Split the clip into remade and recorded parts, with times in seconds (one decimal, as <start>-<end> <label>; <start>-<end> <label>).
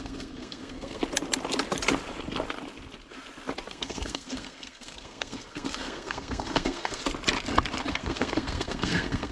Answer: 0.0-1.0 remade; 1.0-3.7 recorded; 3.7-7.0 remade; 7.0-7.9 recorded; 7.9-9.3 remade